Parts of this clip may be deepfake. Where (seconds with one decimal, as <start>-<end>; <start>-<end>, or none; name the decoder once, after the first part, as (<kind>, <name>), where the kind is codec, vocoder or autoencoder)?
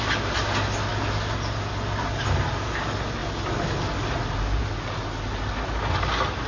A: none